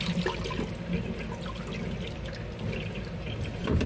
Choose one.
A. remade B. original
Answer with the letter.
B